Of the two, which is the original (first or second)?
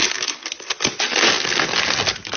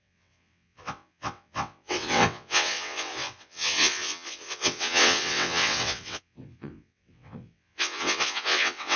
first